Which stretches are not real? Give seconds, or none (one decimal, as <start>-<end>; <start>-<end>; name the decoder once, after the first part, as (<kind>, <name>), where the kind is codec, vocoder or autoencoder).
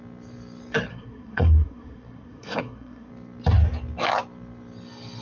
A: 0.9-3.1 (codec, SNAC)